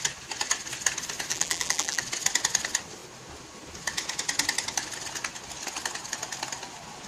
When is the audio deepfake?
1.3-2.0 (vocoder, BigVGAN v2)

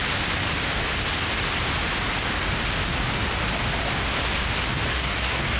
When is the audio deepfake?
4.9-5.6 (codec, DAC)

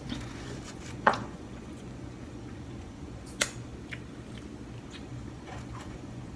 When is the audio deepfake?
0.0-3.7 (vocoder, Vocos); 4.8-6.4

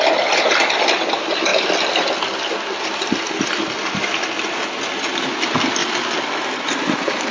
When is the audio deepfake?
none